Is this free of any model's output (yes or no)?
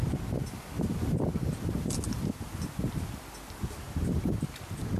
yes